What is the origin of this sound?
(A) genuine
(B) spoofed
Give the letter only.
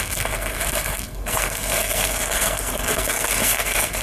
B